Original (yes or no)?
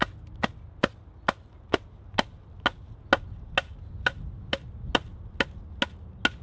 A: yes